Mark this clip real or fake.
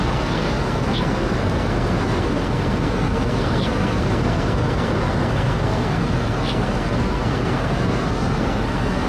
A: fake